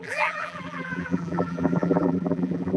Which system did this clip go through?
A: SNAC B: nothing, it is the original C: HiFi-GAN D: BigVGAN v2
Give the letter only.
D